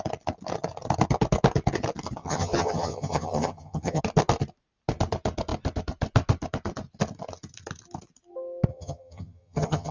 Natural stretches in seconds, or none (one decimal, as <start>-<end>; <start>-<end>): 0.0-2.2; 4.0-8.7